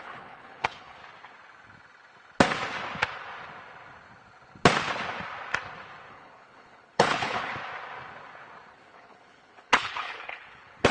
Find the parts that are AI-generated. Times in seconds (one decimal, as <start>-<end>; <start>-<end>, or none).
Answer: 0.0-1.0; 6.1-7.5; 8.7-10.9